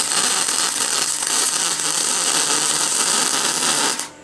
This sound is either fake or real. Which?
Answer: real